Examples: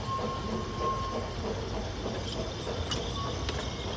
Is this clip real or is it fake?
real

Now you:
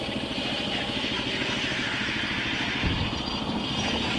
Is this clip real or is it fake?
real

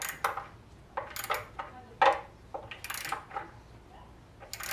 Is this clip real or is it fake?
real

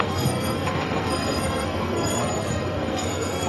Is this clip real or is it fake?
fake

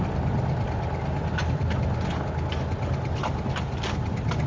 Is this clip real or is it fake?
real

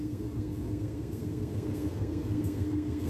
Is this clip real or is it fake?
fake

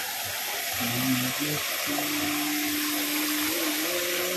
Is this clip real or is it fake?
real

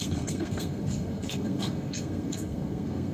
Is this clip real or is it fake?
fake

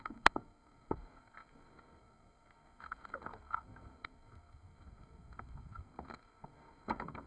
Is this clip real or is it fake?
fake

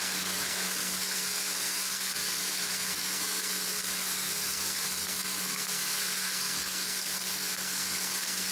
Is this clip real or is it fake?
fake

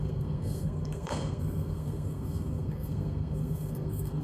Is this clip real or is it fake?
fake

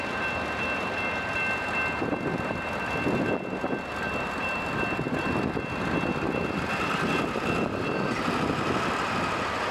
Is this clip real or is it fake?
real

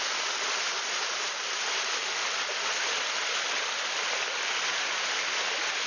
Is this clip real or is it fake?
real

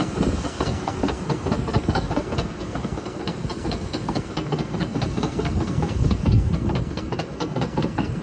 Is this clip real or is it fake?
fake